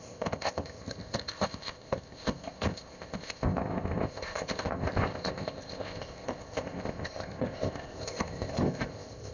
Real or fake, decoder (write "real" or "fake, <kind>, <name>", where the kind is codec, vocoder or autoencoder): fake, codec, ZipCodec